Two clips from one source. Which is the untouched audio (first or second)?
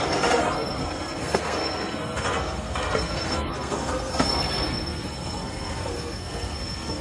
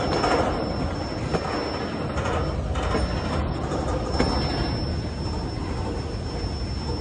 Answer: second